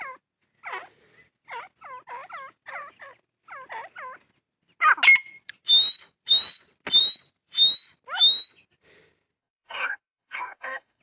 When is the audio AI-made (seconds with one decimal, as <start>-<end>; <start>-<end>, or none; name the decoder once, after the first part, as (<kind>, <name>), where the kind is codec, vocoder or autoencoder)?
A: 9.4-11.0 (codec, DAC)